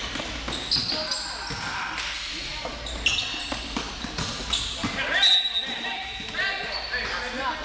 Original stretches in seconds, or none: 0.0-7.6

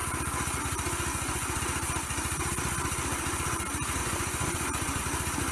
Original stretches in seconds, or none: 0.0-1.1; 1.6-4.0; 5.0-5.5

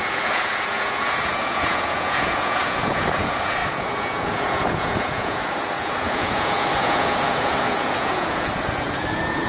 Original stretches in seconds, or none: none